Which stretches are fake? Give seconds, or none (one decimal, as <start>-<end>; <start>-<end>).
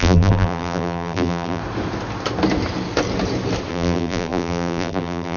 0.0-1.6; 3.7-5.4